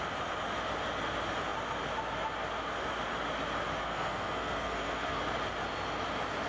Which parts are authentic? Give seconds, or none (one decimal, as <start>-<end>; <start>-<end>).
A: 0.0-3.8; 5.2-6.5